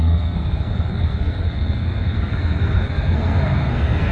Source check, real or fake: fake